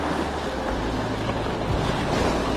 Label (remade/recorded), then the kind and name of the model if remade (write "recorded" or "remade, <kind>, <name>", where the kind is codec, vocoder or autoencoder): recorded